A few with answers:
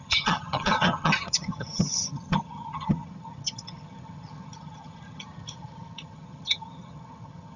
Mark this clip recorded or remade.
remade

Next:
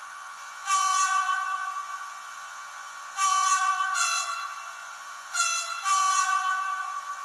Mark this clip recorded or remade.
remade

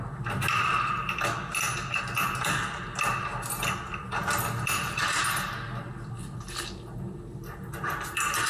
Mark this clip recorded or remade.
recorded